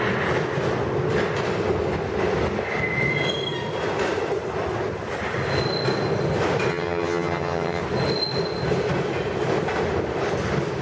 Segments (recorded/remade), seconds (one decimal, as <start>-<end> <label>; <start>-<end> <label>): 0.0-6.7 recorded; 6.7-7.8 remade; 7.8-10.8 recorded